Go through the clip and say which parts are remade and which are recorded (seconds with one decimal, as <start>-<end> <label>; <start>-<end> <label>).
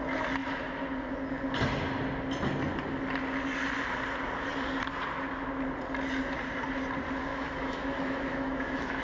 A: 0.0-7.3 recorded; 7.3-9.0 remade